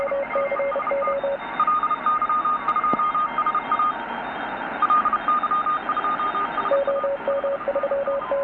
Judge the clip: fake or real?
real